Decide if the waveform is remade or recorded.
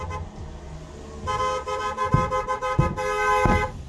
recorded